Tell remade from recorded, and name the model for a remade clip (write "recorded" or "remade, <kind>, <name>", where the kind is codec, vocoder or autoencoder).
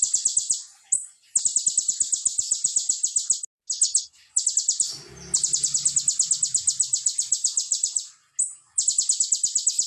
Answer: recorded